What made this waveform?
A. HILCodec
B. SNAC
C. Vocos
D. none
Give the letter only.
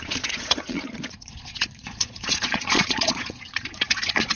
C